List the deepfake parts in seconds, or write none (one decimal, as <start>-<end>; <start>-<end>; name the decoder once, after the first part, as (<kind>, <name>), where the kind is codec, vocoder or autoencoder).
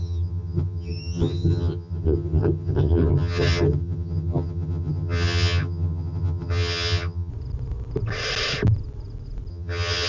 0.0-7.3 (vocoder, HiFi-GAN); 9.5-10.1